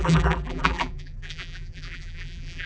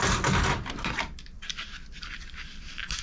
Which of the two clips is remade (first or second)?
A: first